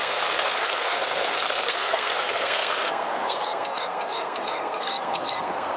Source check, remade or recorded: remade